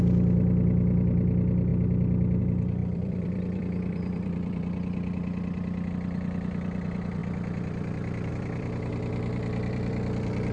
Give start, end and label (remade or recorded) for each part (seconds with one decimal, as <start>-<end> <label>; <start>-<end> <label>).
0.0-1.7 remade; 1.7-2.4 recorded; 2.4-10.5 remade